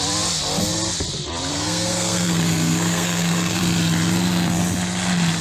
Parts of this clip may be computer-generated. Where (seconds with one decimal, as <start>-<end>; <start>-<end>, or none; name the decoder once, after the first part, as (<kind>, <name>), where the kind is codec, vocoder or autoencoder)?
1.5-3.6 (codec, SNAC)